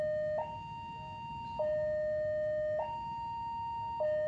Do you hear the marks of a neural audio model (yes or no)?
no